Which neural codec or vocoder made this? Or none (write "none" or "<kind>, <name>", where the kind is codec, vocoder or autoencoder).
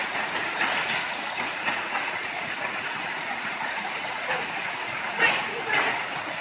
vocoder, Vocos